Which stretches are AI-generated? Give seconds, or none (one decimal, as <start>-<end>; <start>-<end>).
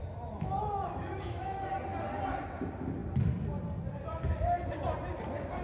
0.0-1.7